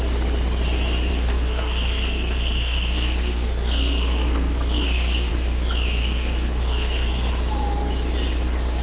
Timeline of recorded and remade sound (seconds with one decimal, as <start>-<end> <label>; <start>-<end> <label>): 0.0-1.1 recorded; 1.1-5.3 remade; 5.3-6.0 recorded; 6.0-7.3 remade; 7.3-8.8 recorded